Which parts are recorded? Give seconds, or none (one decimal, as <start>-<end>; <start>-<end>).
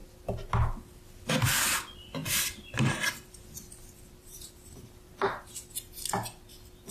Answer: 0.0-2.2; 5.4-6.9